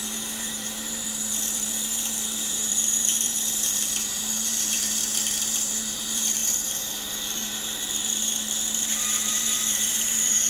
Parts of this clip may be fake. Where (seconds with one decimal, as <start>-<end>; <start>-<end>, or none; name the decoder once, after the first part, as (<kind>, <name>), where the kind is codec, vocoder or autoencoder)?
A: 0.0-10.5 (vocoder, BigVGAN v2)